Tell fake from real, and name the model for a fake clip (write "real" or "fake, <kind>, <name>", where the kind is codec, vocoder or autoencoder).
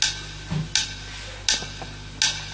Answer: real